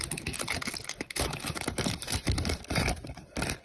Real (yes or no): no